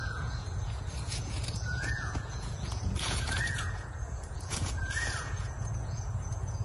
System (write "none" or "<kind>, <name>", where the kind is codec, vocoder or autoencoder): vocoder, Vocos